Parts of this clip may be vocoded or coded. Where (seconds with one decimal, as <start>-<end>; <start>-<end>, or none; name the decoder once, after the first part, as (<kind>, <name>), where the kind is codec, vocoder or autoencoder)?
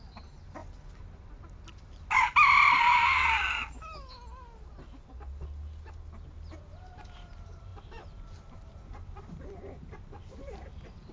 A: 0.0-0.6 (vocoder, BigVGAN v2); 2.2-2.9; 6.6-11.1